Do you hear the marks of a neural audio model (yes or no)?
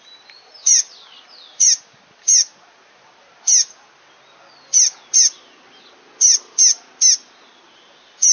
no